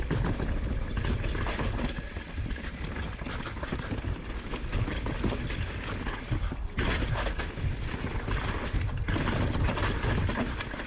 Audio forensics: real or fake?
real